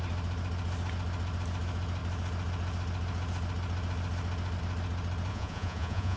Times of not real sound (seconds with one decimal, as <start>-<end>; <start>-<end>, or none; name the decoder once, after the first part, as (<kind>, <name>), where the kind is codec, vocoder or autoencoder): 5.3-6.2 (vocoder, Vocos)